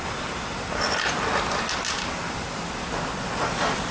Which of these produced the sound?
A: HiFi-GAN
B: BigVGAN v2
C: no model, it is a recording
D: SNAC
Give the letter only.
C